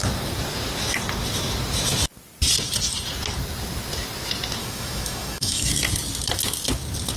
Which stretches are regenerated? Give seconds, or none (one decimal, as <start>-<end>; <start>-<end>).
4.6-5.7